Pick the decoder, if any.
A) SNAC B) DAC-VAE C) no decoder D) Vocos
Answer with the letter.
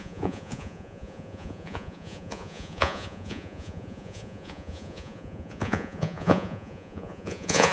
D